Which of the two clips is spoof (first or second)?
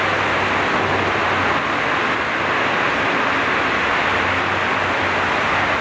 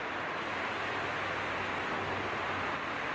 second